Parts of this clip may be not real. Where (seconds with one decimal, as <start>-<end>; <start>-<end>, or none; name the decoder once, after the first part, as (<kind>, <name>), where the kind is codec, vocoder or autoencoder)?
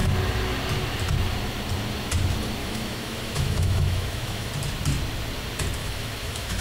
2.6-4.5 (autoencoder, DAC-VAE); 5.8-6.6